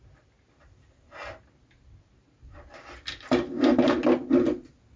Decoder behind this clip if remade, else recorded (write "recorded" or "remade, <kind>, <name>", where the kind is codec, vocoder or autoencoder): recorded